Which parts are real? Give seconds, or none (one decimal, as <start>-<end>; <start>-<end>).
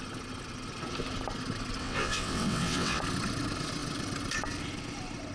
0.0-1.8; 3.0-5.3